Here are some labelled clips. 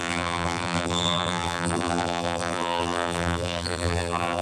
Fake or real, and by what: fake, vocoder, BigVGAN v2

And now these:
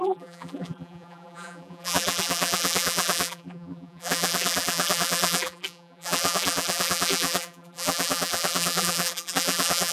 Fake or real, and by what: fake, vocoder, BigVGAN v2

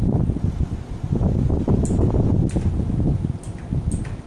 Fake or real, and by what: real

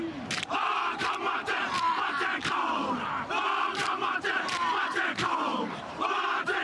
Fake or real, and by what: fake, vocoder, BigVGAN v2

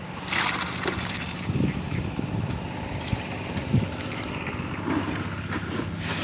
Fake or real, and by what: real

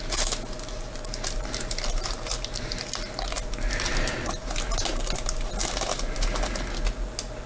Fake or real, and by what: real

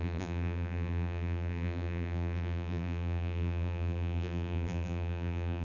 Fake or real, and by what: fake, vocoder, BigVGAN v2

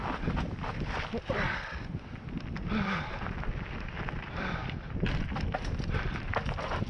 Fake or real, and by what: fake, vocoder, BigVGAN v2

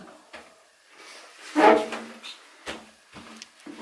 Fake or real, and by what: real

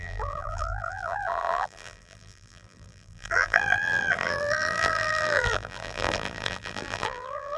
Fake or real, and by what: fake, vocoder, BigVGAN v2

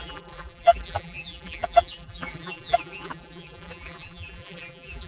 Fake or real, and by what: fake, vocoder, BigVGAN v2